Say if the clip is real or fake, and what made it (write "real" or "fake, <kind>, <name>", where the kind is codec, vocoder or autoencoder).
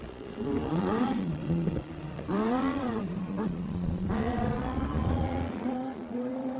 fake, vocoder, Vocos